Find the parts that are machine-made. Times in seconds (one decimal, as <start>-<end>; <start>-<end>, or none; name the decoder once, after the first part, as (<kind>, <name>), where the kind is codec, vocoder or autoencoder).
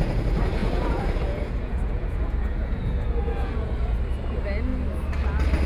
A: 0.6-4.0 (vocoder, Vocos)